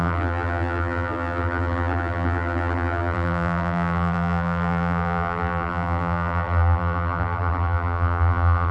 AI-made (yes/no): yes